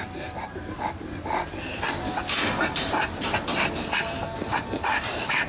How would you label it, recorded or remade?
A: recorded